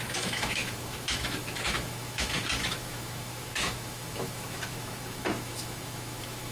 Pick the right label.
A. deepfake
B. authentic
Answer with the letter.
A